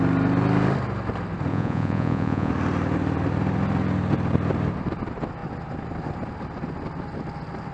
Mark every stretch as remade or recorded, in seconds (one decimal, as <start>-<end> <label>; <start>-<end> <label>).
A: 0.0-1.5 recorded; 1.5-2.5 remade; 2.5-7.7 recorded